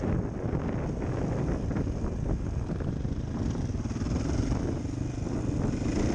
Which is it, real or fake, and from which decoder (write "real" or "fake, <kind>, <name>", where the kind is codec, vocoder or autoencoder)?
real